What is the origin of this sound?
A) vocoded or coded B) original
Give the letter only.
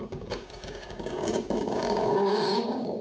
A